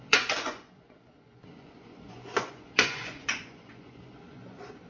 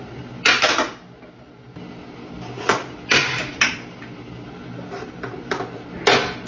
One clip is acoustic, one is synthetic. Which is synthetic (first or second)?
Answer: first